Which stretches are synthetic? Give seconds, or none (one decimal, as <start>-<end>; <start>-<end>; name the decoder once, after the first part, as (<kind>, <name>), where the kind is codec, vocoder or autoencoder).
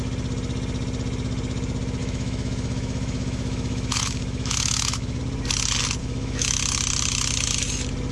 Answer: 2.0-5.2 (autoencoder, DAC-VAE); 6.0-6.6